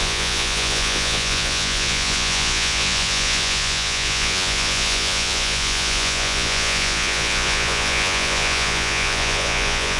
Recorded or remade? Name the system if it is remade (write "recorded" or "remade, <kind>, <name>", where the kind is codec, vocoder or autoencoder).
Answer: remade, vocoder, Vocos